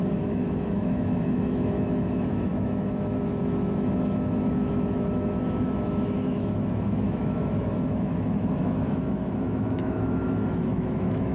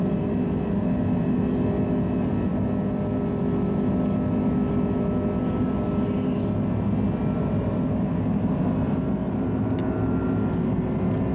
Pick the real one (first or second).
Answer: second